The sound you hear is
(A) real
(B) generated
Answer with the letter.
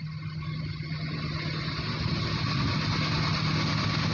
A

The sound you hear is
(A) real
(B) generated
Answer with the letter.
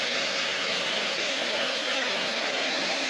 B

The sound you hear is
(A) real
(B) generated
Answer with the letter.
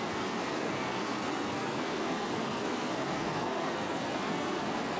B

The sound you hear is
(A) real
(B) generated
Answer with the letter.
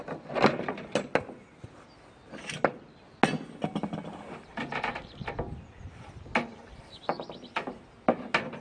A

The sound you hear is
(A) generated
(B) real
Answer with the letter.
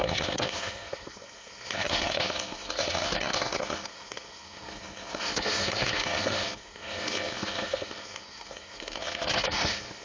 A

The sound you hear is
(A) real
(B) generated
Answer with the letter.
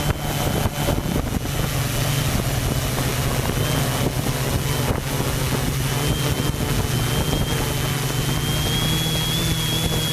A